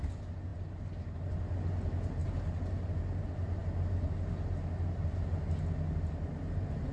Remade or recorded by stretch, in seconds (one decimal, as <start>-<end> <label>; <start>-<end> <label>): 0.0-6.9 recorded